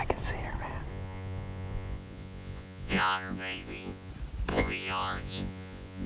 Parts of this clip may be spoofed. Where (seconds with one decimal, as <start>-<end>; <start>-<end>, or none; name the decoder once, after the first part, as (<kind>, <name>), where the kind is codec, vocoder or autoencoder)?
0.9-4.1 (vocoder, Vocos); 4.5-6.1